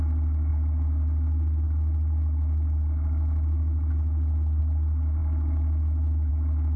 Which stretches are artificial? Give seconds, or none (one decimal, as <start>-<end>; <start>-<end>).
none